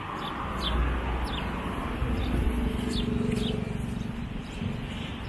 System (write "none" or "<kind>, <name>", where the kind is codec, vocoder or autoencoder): none